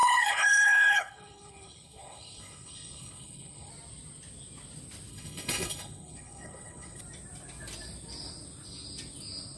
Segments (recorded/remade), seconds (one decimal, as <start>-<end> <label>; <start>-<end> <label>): 0.0-3.7 remade; 3.7-5.1 recorded; 5.1-7.0 remade; 7.0-9.6 recorded